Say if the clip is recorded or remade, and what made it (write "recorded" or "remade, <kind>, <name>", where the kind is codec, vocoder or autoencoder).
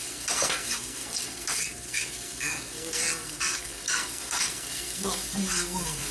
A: remade, codec, SNAC